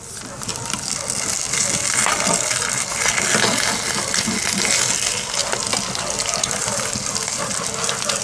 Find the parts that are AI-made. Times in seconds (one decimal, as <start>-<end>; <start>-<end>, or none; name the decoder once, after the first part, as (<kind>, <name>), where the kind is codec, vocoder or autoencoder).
none